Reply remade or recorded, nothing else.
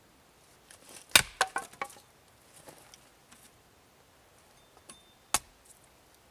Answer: recorded